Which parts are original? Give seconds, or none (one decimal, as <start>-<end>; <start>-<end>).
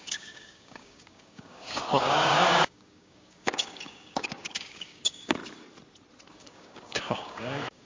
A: 5.4-6.3